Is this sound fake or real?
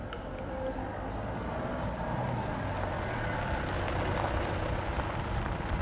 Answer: real